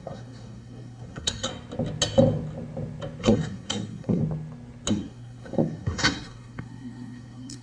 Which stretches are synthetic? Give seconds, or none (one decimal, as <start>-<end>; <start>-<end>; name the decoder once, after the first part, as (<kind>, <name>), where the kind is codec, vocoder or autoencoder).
0.0-1.5 (codec, SNAC); 3.2-4.2; 4.9-7.6